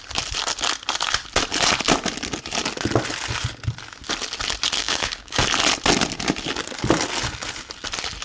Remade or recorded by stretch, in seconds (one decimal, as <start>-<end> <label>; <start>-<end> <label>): 0.0-4.8 recorded; 4.8-5.4 remade; 5.4-8.2 recorded